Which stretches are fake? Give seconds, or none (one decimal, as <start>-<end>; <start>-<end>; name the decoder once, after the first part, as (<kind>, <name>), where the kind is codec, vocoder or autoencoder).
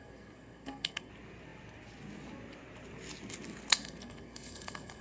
0.0-1.1 (codec, SNAC); 3.7-5.0